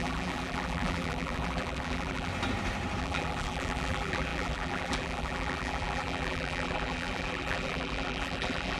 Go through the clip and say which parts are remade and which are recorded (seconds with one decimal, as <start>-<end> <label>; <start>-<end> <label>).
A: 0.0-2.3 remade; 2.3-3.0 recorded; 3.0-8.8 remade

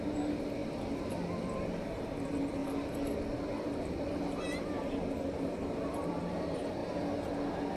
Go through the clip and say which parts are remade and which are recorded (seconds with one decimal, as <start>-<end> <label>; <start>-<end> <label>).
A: 0.0-0.6 remade; 0.6-1.5 recorded; 1.5-2.6 remade; 2.6-3.8 recorded; 3.8-6.8 remade; 6.8-7.8 recorded

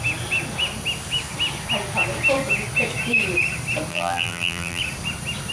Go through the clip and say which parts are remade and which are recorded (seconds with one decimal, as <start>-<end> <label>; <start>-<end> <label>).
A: 0.0-3.9 recorded; 3.9-4.8 remade; 4.8-5.5 recorded

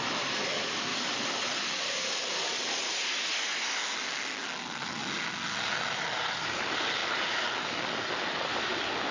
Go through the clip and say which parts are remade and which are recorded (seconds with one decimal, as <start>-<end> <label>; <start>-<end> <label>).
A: 0.0-9.1 recorded

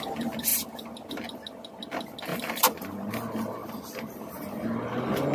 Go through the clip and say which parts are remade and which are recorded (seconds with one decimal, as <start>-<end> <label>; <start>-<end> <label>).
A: 0.0-2.3 recorded; 2.3-3.1 remade; 3.1-3.6 recorded; 3.6-4.2 remade; 4.2-5.3 recorded